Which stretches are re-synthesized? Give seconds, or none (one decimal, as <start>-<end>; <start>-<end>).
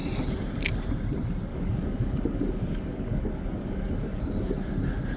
1.5-4.2